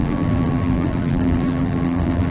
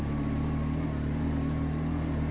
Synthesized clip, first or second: first